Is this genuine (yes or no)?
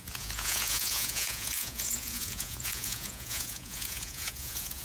no